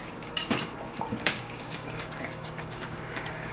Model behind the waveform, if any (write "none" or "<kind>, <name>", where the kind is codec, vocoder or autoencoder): codec, DAC